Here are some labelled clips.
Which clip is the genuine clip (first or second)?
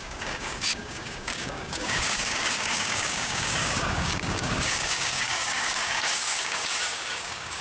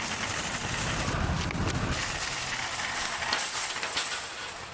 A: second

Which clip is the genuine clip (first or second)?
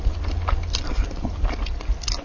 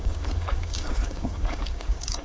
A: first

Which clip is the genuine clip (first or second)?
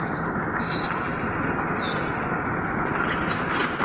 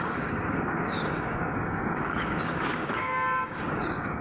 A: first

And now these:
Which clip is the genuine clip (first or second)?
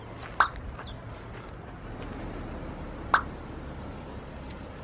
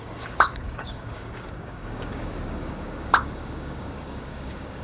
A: first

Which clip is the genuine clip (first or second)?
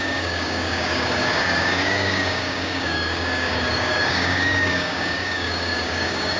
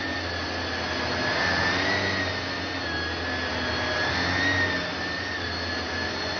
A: second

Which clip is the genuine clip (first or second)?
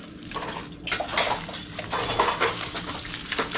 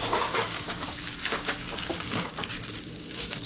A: first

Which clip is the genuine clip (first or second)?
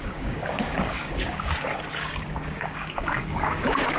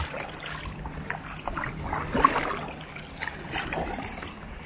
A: second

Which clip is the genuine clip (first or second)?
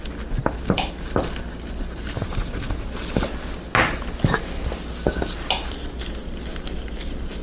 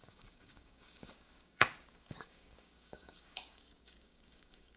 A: first